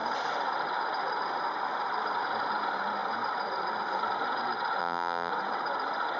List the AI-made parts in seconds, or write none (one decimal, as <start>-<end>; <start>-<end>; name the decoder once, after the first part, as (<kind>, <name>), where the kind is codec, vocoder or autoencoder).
4.8-5.3 (vocoder, BigVGAN v2)